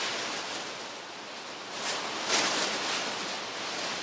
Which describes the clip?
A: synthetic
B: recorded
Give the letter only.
B